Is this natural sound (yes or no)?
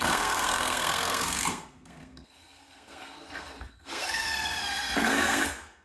no